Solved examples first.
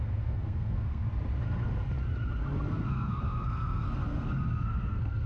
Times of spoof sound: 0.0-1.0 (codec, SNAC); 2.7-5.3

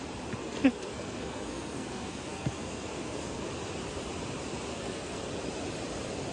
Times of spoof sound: 0.4-3.5 (codec, SNAC); 4.7-5.3

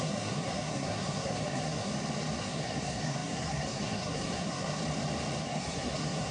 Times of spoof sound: 0.0-1.9 (codec, SNAC); 2.4-4.8; 5.4-6.3

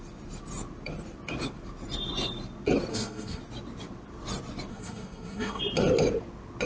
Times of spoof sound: 2.9-3.4 (codec, SNAC); 4.7-5.6